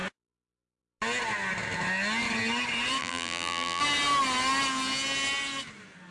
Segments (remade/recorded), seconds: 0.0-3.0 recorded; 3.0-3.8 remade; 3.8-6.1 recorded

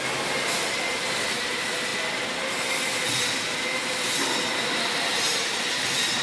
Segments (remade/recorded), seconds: 0.0-6.2 recorded

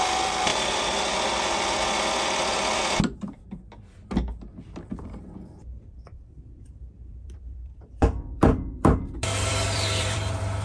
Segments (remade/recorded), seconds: 0.0-0.5 remade; 0.5-5.0 recorded; 5.0-10.6 remade

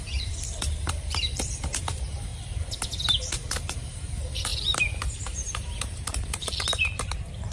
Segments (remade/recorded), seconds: 0.0-2.3 remade; 2.3-3.2 recorded; 3.2-4.5 remade; 4.5-5.1 recorded; 5.1-7.5 remade

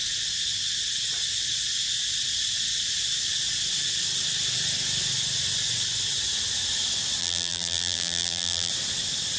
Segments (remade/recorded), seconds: 0.0-7.2 recorded; 7.2-8.7 remade; 8.7-9.4 recorded

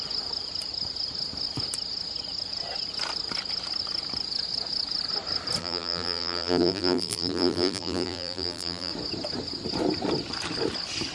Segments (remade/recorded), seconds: 0.0-5.6 recorded; 5.6-8.9 remade; 8.9-11.1 recorded